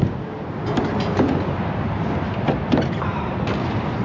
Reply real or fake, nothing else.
real